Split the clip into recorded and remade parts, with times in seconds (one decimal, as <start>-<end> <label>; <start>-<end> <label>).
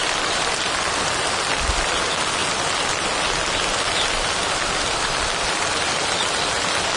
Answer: 0.0-7.0 recorded